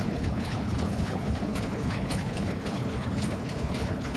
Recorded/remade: remade